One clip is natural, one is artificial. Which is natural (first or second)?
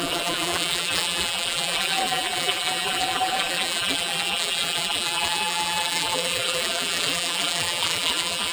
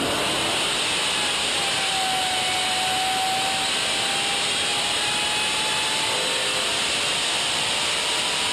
second